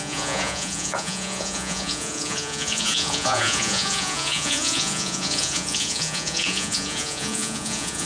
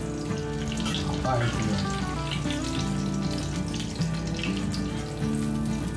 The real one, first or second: second